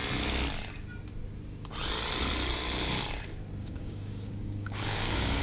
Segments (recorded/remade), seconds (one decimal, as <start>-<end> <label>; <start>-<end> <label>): 0.0-3.6 recorded; 3.6-5.4 remade